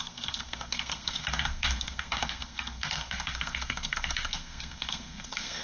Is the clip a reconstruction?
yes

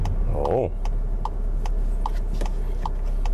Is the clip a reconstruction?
no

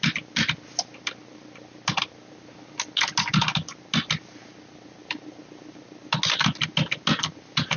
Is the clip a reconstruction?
no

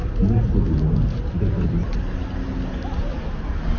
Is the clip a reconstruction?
no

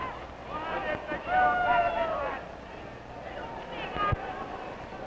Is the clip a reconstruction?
no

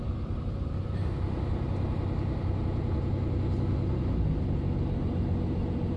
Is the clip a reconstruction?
no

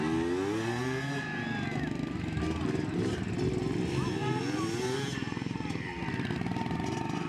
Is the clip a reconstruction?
no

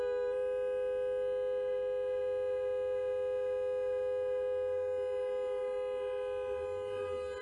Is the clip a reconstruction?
no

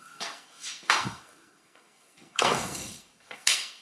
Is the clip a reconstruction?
yes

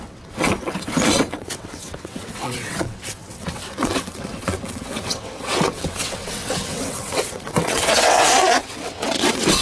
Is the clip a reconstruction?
yes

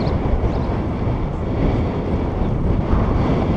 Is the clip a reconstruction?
no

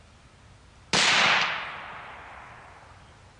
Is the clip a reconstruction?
no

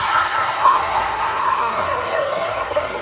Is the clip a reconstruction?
yes